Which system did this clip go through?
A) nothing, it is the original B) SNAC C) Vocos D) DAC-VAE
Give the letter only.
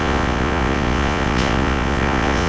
C